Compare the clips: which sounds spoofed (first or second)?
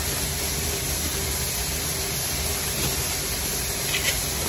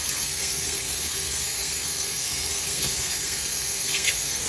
second